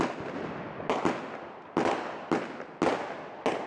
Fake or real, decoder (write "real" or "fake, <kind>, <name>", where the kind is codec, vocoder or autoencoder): real